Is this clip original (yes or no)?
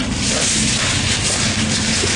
yes